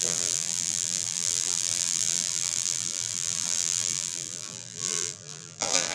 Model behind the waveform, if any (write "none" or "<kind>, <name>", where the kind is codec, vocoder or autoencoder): vocoder, BigVGAN v2